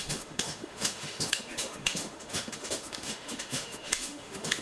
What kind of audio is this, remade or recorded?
remade